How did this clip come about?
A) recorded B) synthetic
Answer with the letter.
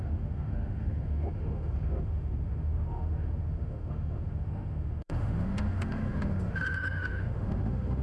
B